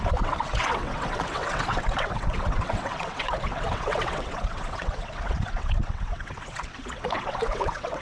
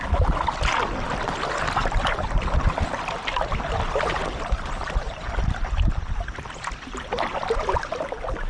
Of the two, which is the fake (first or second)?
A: first